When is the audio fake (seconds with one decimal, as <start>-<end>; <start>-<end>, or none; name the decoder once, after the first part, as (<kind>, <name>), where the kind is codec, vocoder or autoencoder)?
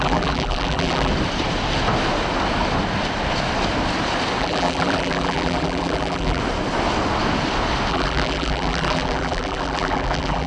0.0-1.1 (vocoder, BigVGAN v2); 4.4-6.4; 7.9-10.5